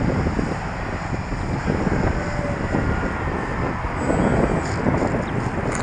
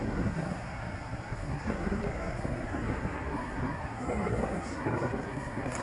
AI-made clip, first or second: second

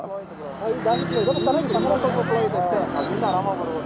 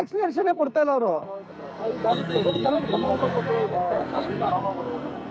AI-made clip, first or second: second